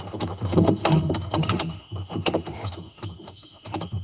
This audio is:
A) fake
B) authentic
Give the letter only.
A